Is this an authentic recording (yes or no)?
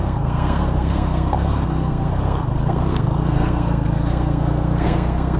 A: no